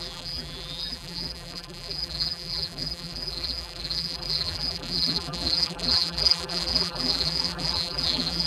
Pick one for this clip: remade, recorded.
remade